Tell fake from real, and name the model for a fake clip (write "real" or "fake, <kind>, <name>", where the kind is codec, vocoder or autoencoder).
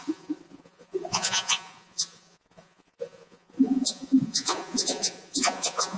fake, vocoder, Vocos